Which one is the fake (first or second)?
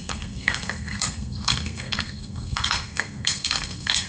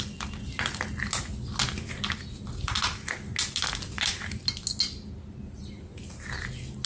first